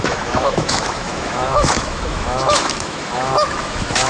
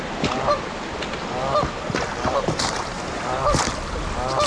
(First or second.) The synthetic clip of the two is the first